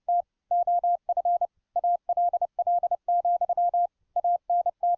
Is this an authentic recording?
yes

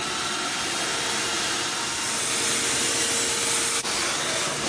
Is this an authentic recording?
yes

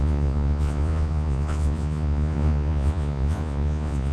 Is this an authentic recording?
no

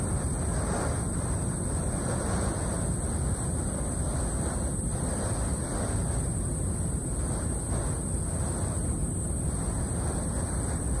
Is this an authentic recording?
yes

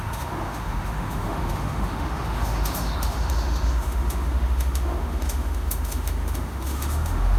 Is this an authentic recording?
no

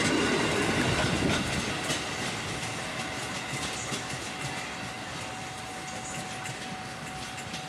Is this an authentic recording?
yes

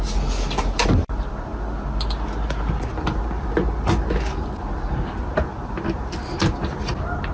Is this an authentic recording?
yes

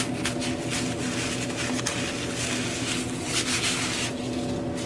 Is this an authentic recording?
yes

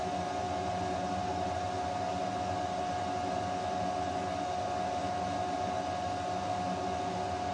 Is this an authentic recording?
yes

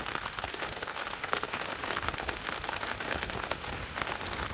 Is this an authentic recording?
no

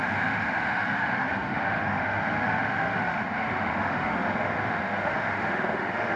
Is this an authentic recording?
no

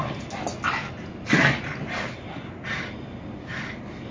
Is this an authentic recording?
yes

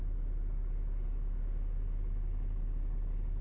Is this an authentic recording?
yes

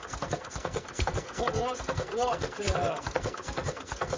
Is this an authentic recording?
no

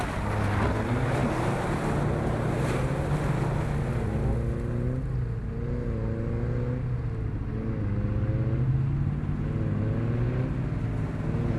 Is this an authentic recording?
yes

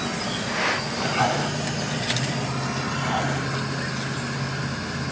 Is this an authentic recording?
yes